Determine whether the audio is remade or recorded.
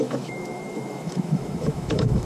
remade